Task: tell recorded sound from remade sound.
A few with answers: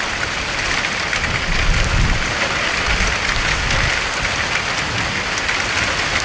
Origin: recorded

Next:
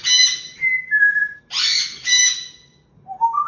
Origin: recorded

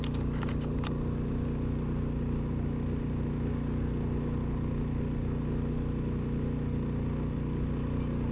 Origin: recorded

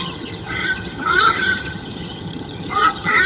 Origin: remade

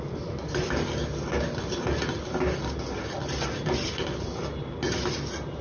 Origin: recorded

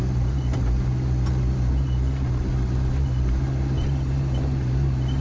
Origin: recorded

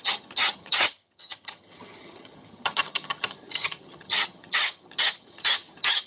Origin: remade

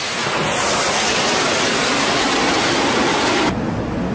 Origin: recorded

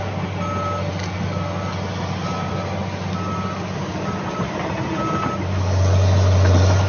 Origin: recorded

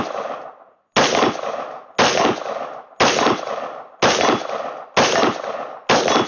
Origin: recorded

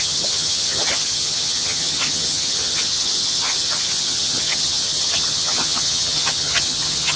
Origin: remade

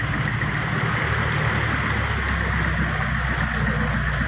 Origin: recorded